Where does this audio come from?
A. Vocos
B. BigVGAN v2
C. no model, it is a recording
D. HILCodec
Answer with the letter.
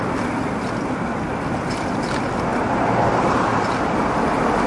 C